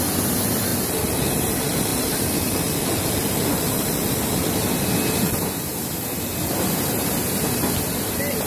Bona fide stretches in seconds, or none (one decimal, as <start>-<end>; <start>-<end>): 0.0-8.5